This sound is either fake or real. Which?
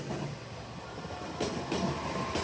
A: real